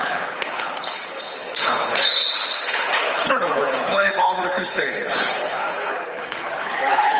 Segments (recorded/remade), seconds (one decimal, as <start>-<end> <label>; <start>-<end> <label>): 0.0-7.2 remade